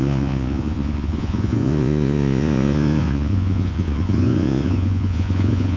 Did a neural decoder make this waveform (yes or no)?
yes